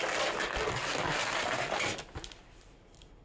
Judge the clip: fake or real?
fake